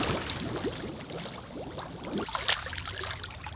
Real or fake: real